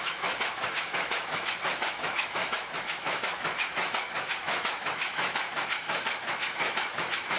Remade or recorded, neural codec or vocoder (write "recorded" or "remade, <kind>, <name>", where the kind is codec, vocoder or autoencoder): remade, autoencoder, DAC-VAE